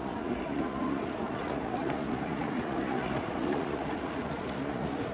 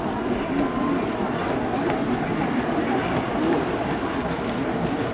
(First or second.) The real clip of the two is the second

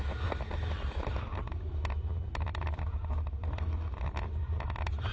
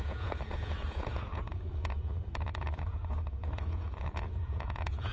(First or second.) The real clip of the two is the first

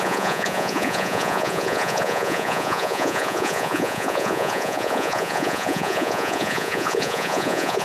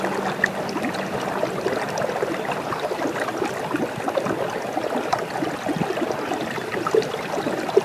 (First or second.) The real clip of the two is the second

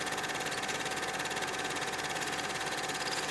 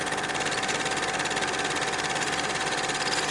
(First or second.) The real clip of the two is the second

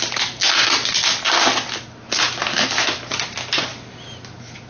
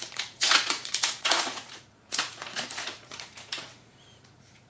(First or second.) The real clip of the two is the first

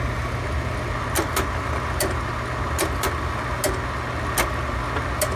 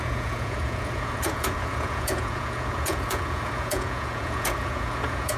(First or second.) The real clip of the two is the first